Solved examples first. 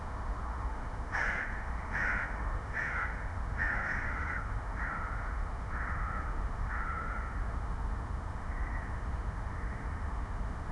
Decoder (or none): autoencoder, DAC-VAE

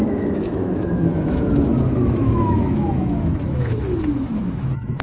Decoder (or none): autoencoder, DAC-VAE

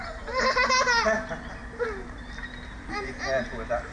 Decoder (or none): none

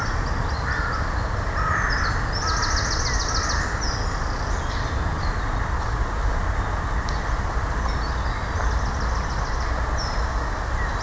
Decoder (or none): none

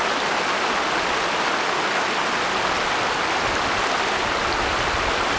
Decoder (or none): none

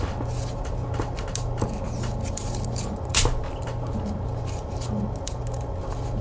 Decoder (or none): none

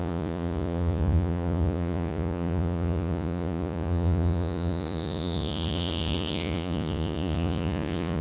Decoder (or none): vocoder, Vocos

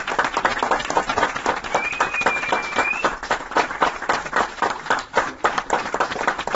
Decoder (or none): vocoder, BigVGAN v2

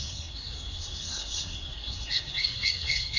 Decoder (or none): codec, SNAC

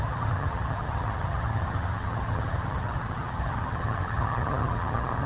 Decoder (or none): vocoder, HiFi-GAN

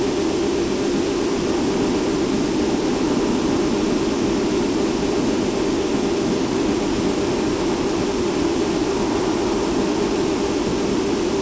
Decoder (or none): none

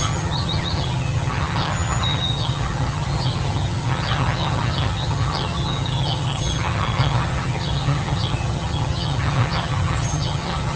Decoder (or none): vocoder, HiFi-GAN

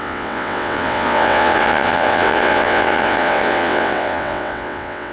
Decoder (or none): vocoder, WaveNeXt